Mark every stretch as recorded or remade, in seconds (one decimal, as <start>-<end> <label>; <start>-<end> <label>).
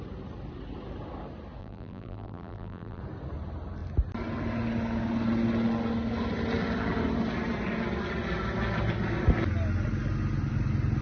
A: 0.0-1.6 recorded; 1.6-3.0 remade; 3.0-11.0 recorded